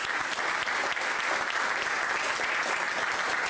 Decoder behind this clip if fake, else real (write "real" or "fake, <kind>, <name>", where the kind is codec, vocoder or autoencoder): real